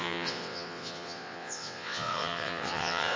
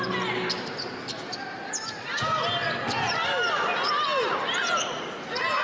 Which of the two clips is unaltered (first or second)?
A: second